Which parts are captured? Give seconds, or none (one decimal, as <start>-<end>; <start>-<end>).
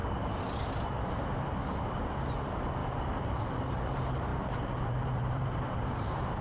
0.0-1.0